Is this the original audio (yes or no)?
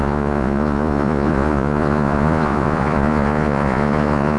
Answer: no